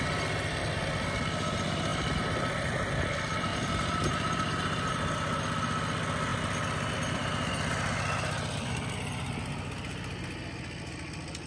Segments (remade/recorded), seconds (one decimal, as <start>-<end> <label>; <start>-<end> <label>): 0.0-3.5 recorded; 3.5-4.9 remade; 4.9-11.5 recorded